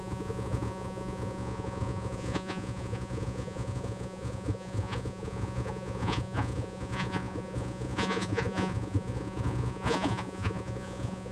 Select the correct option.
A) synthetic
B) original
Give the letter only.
A